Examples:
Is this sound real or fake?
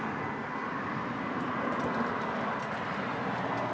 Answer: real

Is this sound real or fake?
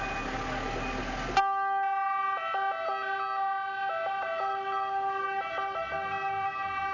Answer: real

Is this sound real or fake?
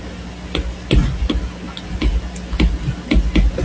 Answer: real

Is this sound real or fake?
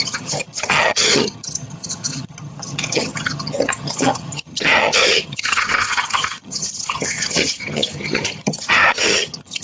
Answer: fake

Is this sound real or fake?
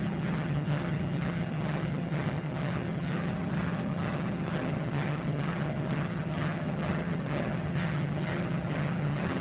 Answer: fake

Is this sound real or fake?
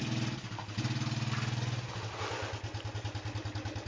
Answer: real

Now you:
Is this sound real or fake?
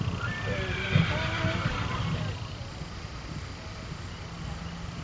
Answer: real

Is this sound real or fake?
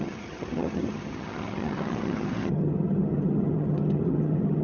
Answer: fake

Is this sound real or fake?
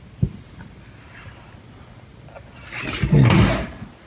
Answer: real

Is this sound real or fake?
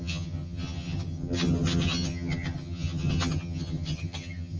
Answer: fake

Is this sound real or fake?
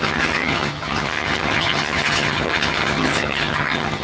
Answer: fake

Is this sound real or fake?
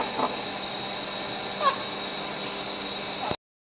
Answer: real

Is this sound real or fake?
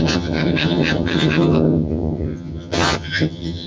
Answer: fake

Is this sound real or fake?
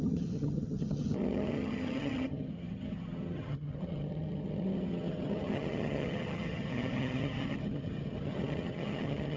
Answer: fake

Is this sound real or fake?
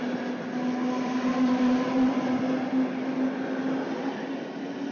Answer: real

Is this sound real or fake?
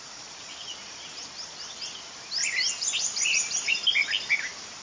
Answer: real